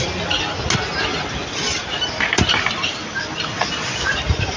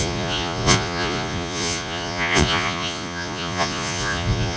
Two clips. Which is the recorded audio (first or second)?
first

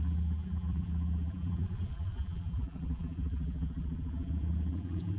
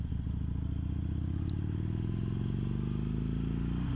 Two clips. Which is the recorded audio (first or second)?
second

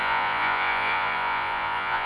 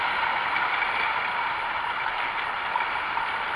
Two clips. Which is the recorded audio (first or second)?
second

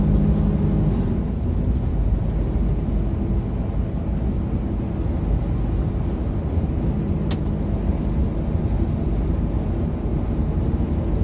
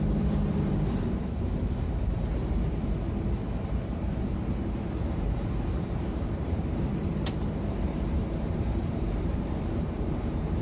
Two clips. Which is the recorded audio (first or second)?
first